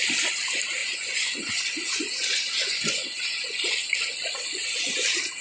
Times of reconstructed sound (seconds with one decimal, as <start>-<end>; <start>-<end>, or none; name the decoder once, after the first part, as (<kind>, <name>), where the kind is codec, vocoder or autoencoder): 0.8-3.9 (vocoder, Vocos)